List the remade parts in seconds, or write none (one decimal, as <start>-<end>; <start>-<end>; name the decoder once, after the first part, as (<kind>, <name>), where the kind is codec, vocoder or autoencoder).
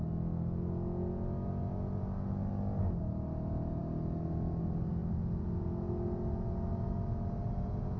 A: none